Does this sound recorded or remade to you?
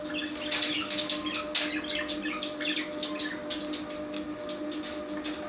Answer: recorded